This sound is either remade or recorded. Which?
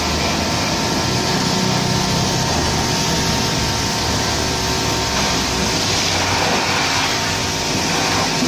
recorded